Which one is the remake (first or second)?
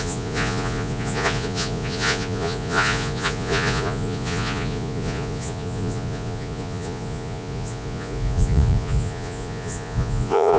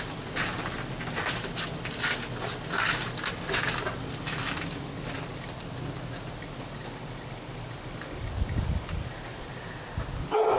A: first